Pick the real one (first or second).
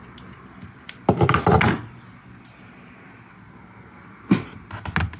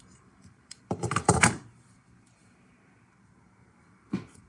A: first